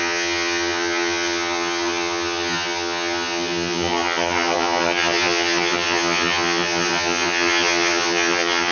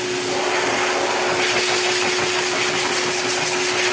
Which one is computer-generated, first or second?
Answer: first